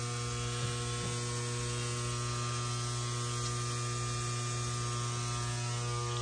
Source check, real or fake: real